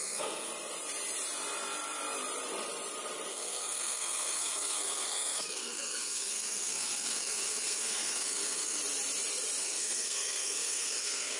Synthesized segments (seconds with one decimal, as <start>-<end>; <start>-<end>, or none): 0.0-0.5; 3.3-8.8; 9.6-11.4